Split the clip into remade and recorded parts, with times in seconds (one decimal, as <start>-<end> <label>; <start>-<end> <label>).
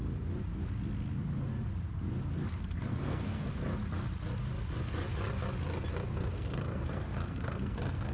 0.0-2.9 recorded; 2.9-3.5 remade; 3.5-5.9 recorded; 5.9-8.1 remade